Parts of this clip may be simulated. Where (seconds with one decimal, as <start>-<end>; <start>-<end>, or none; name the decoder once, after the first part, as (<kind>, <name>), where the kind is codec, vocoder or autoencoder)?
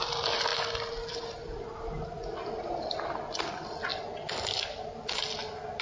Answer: none